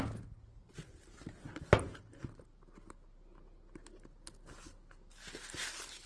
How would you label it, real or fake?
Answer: real